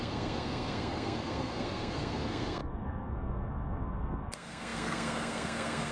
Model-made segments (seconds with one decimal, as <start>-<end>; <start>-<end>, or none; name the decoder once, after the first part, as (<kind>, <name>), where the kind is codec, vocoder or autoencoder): 0.0-5.9 (codec, SNAC)